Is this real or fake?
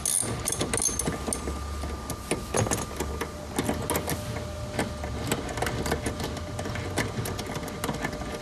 real